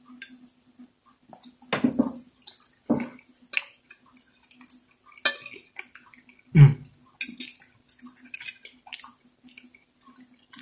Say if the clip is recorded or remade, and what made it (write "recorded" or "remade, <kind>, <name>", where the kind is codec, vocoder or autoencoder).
recorded